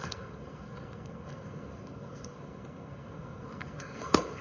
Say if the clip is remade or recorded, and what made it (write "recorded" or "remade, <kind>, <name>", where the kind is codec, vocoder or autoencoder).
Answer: remade, codec, SNAC